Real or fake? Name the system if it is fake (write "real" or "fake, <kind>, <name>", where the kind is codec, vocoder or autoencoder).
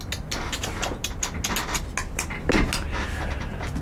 real